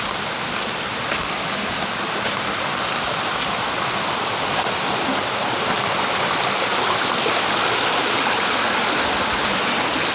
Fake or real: real